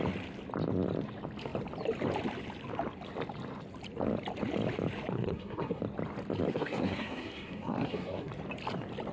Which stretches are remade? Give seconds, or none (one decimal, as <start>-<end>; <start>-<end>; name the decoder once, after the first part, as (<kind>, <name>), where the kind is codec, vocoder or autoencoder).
5.1-5.8 (codec, SNAC); 6.5-8.3

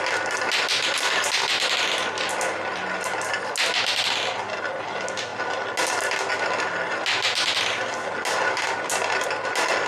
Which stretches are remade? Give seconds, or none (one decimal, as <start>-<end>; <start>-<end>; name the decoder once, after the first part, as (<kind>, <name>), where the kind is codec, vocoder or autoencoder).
none

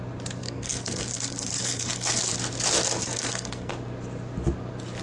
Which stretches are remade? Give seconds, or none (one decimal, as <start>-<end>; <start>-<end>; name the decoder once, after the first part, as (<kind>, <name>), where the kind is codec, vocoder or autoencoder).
0.4-2.3 (codec, SNAC); 3.0-3.7

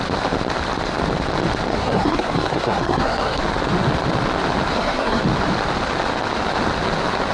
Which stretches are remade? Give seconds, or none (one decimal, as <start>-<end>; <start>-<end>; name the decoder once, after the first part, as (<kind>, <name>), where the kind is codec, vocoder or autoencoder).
1.7-3.4 (codec, SNAC); 4.7-5.2

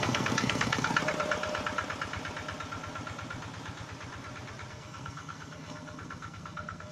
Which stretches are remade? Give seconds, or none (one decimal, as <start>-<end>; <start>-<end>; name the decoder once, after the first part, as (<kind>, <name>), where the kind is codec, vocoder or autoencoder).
0.0-0.9 (codec, SNAC); 4.7-6.9

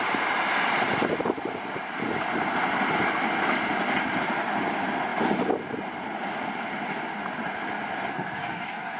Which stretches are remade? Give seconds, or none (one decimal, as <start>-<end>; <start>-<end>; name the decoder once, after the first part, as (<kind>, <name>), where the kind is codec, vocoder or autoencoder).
8.1-9.0 (codec, SNAC)

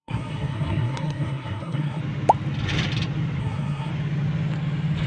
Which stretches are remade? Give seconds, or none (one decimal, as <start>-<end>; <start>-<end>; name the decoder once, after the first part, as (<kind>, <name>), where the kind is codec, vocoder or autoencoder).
0.0-2.0 (codec, SNAC); 3.4-3.9